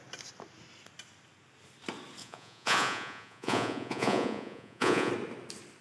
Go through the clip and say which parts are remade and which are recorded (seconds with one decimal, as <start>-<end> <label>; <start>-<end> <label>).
0.0-2.2 recorded; 2.2-5.1 remade; 5.1-5.8 recorded